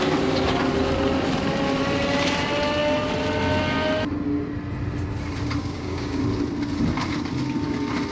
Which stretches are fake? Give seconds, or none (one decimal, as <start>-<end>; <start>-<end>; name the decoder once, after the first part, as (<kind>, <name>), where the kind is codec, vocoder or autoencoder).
5.6-6.2 (codec, DAC)